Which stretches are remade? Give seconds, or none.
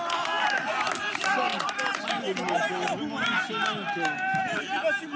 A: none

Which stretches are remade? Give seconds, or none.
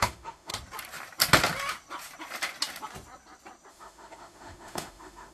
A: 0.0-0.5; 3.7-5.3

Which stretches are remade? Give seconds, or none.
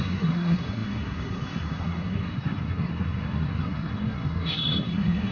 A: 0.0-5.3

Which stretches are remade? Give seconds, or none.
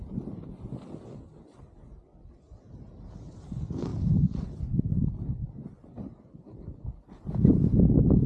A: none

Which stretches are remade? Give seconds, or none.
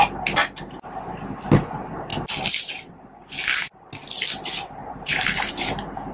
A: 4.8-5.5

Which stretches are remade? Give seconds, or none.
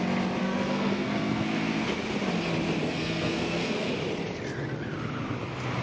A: 0.4-1.8; 2.8-3.9